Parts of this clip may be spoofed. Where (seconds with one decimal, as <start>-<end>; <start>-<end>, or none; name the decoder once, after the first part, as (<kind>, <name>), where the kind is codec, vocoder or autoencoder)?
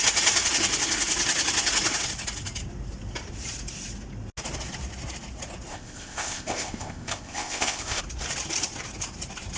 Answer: 5.7-8.0 (codec, ZipCodec)